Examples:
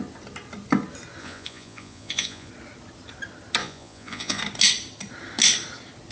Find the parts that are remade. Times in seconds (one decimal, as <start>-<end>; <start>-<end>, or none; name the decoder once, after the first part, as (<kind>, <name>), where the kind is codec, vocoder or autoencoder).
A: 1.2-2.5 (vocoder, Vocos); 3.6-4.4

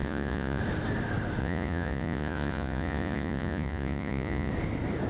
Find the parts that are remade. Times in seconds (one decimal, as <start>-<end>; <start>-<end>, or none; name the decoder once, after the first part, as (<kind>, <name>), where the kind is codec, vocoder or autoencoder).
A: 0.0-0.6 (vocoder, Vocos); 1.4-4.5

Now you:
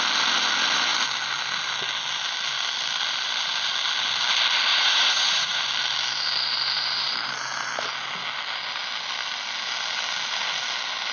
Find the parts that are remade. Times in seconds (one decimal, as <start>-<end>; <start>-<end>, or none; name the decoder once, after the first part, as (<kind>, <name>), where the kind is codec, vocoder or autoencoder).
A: 4.7-5.6 (vocoder, Vocos)

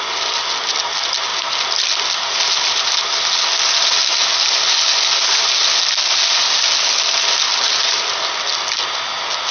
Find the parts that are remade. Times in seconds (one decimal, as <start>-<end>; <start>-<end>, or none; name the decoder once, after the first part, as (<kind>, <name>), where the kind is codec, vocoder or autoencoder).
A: none

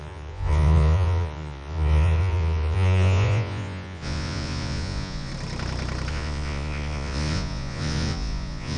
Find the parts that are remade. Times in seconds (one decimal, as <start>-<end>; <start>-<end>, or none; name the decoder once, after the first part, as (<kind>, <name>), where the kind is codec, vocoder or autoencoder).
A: 0.0-5.3 (vocoder, Vocos); 6.1-8.8

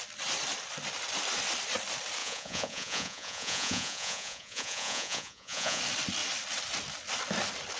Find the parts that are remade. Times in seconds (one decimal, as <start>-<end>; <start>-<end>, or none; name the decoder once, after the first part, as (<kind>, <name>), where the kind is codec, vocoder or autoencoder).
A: 2.2-5.8 (vocoder, Vocos)

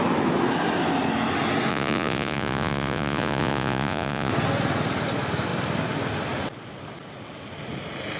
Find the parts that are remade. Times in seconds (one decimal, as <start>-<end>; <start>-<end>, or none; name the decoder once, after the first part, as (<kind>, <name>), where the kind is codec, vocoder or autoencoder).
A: 1.7-4.3 (vocoder, Vocos)